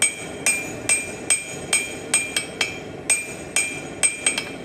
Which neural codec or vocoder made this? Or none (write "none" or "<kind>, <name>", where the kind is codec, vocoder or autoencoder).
none